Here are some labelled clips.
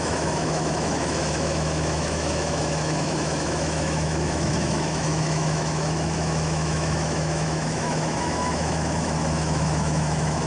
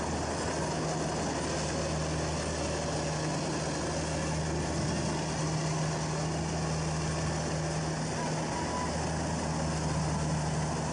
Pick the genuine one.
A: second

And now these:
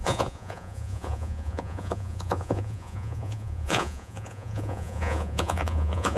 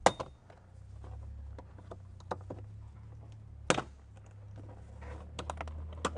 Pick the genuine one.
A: second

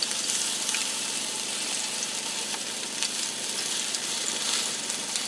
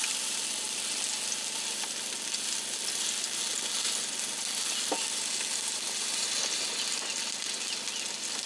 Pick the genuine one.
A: second